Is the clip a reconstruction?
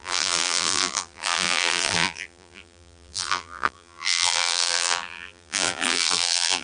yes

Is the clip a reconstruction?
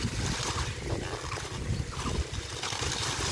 no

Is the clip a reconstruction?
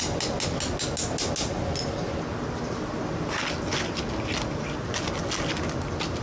no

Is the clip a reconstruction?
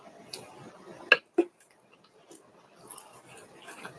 no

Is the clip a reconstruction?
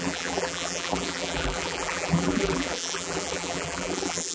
yes